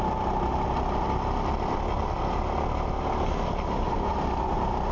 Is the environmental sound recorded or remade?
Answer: recorded